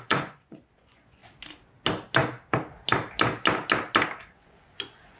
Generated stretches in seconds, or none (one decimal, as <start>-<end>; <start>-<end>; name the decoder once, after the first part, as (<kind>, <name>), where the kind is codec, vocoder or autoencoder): 0.0-1.2 (vocoder, Vocos); 4.3-5.2